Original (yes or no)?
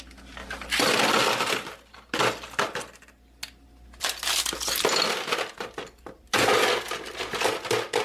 yes